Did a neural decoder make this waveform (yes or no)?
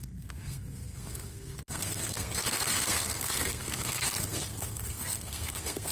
yes